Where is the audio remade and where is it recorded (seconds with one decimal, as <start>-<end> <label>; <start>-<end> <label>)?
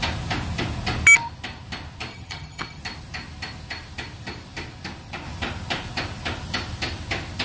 0.0-2.1 recorded; 2.1-2.8 remade; 2.8-7.4 recorded